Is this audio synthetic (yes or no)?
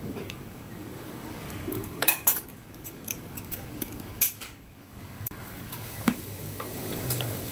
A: yes